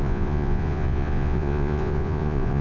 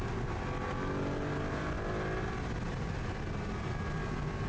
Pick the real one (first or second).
second